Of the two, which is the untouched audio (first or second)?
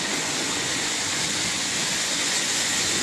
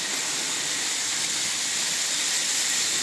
second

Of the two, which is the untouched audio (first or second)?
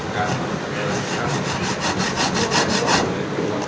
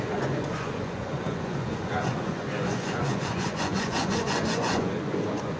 first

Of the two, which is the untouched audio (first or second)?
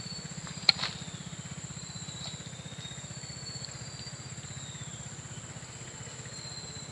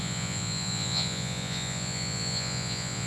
first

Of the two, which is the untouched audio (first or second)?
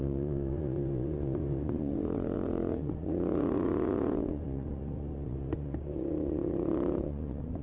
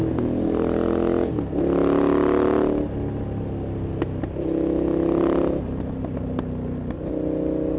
second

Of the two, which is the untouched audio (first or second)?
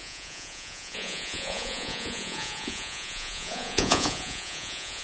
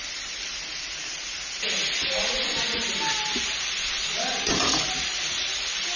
second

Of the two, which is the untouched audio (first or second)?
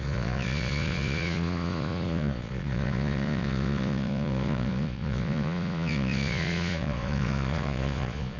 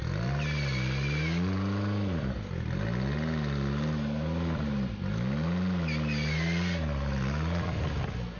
second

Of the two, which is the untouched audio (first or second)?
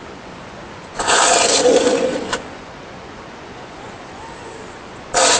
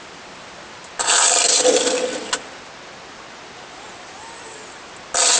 second